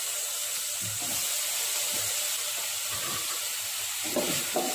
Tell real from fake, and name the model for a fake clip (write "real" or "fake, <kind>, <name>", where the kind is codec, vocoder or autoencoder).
real